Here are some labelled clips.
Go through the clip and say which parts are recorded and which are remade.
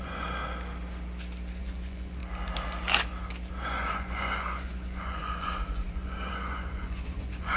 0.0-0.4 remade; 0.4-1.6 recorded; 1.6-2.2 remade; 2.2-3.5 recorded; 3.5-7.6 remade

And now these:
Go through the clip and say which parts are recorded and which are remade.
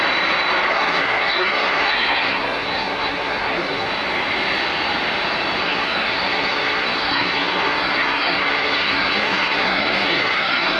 0.0-0.7 recorded; 0.7-3.9 remade; 3.9-5.6 recorded; 5.6-10.8 remade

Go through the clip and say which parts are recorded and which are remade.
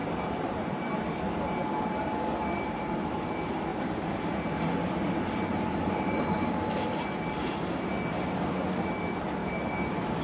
0.0-2.8 remade; 2.8-3.7 recorded; 3.7-4.2 remade; 4.2-5.5 recorded; 5.5-7.0 remade; 7.0-9.4 recorded; 9.4-10.2 remade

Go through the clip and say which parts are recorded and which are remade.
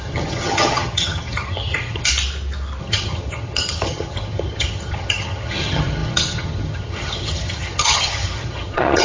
0.0-2.1 remade; 2.1-2.8 recorded; 2.8-9.0 remade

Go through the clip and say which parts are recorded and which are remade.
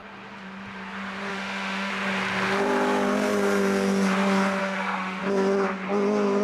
0.0-1.3 recorded; 1.3-1.9 remade; 1.9-4.6 recorded; 4.6-5.2 remade; 5.2-6.4 recorded